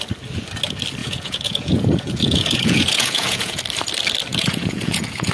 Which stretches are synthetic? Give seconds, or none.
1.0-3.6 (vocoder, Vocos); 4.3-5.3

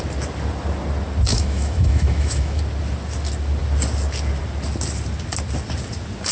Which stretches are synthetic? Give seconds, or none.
1.3-2.6 (autoencoder, DAC-VAE)

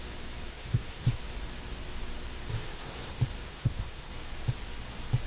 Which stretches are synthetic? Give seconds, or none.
0.5-1.2 (codec, SNAC); 2.5-3.1; 3.5-4.1